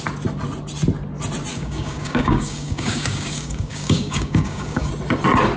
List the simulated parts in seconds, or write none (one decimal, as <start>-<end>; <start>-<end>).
1.5-4.9